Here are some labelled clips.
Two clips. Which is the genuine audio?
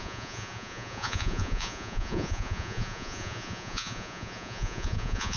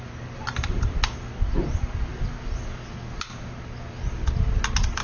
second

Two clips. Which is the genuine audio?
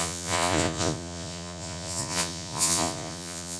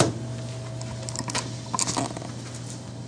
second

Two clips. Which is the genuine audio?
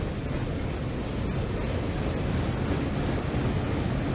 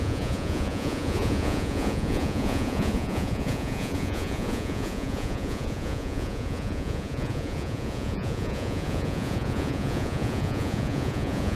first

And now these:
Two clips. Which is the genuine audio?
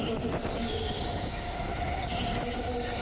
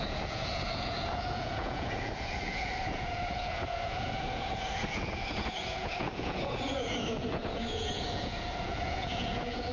first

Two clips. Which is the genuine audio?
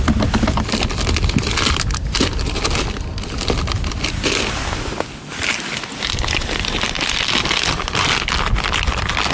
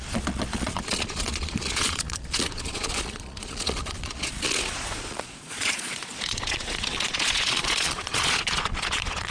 first